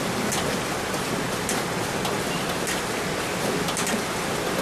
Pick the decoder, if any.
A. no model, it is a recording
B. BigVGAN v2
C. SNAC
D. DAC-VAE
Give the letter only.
A